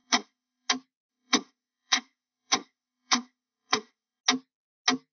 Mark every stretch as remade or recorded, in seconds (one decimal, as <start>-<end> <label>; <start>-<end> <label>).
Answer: 0.0-0.7 remade; 0.7-1.1 recorded; 1.1-4.2 remade; 4.2-5.1 recorded